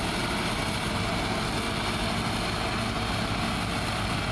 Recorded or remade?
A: recorded